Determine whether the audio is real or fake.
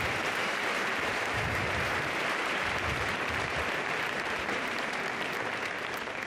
fake